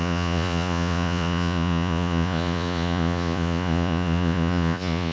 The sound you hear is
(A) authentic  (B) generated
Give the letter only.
B